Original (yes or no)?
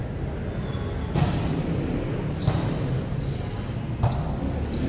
yes